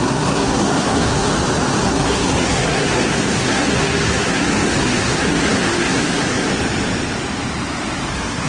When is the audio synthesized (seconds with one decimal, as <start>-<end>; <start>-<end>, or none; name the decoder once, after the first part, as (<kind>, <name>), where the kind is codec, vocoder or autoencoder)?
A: 0.0-1.3 (codec, SNAC); 1.8-6.5; 8.1-8.5